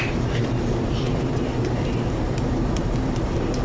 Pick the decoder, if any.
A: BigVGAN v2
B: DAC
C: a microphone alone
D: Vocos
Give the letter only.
A